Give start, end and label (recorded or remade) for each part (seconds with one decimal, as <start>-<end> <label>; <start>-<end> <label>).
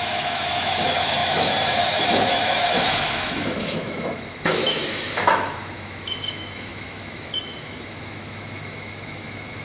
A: 0.0-9.6 remade